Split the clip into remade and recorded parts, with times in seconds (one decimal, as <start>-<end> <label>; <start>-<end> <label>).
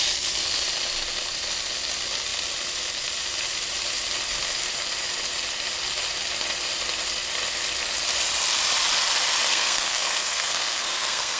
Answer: 0.0-9.5 recorded; 9.5-11.4 remade